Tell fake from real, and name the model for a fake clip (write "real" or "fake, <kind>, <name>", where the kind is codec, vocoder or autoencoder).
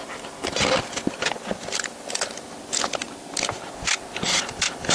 real